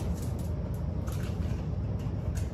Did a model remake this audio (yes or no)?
no